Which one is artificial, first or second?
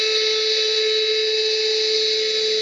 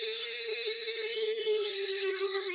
second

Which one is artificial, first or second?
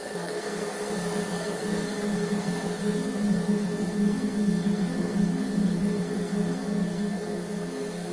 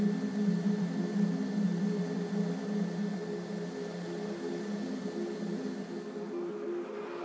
first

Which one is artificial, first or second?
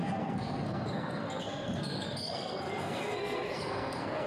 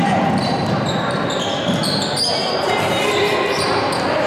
first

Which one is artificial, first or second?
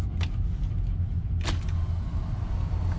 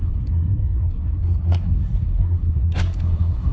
second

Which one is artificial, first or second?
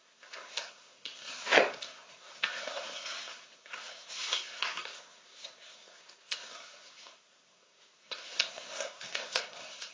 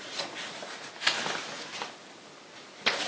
first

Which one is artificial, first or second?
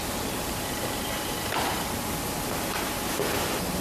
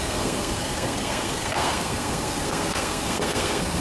second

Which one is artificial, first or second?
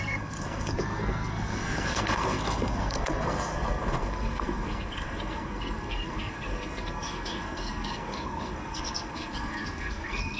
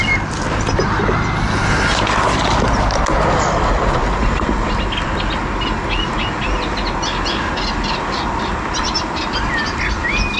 first